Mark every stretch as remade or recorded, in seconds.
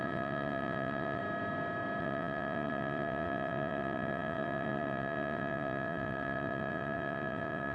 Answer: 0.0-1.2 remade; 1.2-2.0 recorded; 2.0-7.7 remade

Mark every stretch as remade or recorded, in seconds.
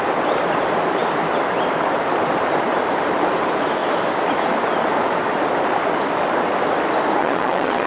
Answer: 0.0-7.2 recorded; 7.2-7.9 remade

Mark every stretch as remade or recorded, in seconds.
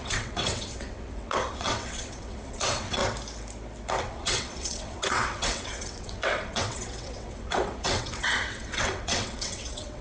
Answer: 0.0-3.0 remade; 3.0-4.0 recorded; 4.0-10.0 remade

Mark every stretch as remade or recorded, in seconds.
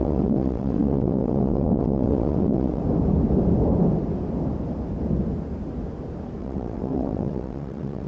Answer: 0.0-2.8 remade; 2.8-6.4 recorded; 6.4-8.1 remade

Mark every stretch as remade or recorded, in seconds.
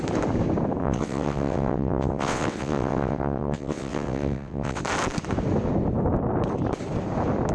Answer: 0.0-0.8 recorded; 0.8-4.8 remade; 4.8-7.5 recorded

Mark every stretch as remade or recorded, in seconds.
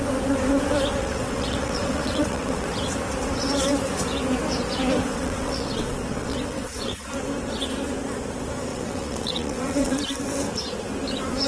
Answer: 0.0-1.0 recorded; 1.0-2.7 remade; 2.7-5.1 recorded; 5.1-7.1 remade; 7.1-8.7 recorded; 8.7-10.0 remade; 10.0-11.5 recorded